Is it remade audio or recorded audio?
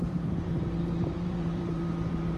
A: remade